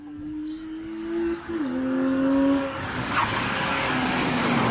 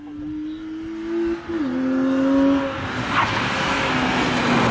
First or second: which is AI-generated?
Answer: first